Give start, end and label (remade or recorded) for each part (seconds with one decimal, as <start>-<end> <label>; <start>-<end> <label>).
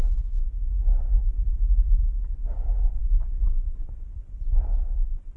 0.0-2.4 remade; 2.4-3.0 recorded; 3.0-5.4 remade